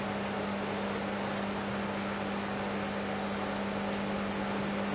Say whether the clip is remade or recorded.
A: recorded